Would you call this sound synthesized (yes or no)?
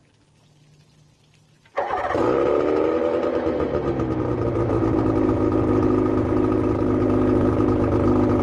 no